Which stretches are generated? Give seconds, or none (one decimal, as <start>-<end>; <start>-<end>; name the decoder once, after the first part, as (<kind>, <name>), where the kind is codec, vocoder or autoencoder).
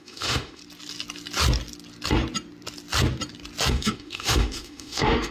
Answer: 0.0-0.6 (autoencoder, DAC-VAE); 3.7-5.3